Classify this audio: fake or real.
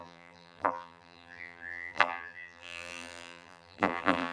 fake